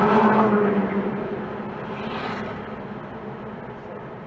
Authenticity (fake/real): real